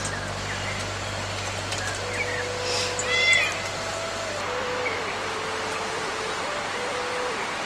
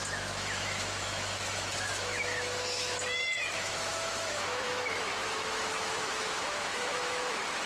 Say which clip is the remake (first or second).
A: second